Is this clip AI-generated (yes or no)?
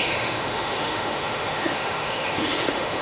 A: yes